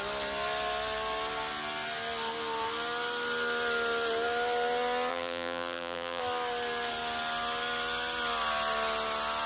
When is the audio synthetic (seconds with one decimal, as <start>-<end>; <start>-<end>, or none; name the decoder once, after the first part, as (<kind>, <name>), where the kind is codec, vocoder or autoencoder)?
5.1-6.2 (vocoder, BigVGAN v2)